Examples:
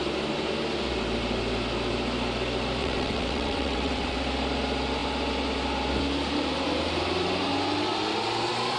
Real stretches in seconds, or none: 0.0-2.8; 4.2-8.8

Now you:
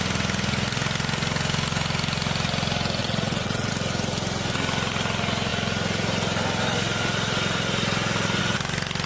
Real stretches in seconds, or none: 0.0-3.0; 3.7-9.1